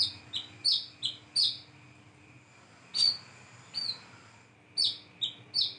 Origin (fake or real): real